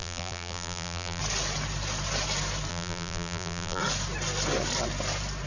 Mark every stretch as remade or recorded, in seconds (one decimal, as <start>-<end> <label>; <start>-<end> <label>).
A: 0.0-1.2 remade; 1.2-2.7 recorded; 2.7-3.8 remade; 3.8-5.5 recorded